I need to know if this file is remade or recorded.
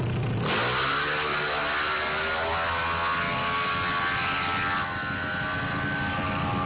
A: recorded